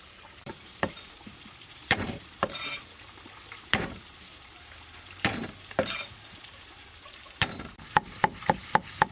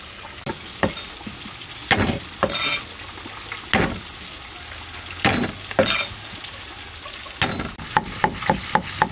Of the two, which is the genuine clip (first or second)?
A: second